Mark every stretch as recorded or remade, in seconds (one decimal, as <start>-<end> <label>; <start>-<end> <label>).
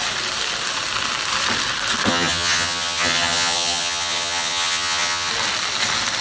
0.0-2.1 recorded; 2.1-5.3 remade; 5.3-6.2 recorded